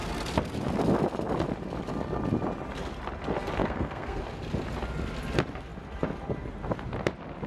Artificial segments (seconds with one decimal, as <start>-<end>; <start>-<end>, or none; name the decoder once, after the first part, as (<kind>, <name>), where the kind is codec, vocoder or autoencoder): 3.6-4.2 (codec, SNAC)